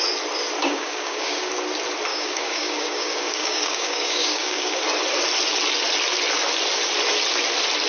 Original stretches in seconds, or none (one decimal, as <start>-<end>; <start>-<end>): 0.0-0.6; 1.5-2.1; 4.8-7.9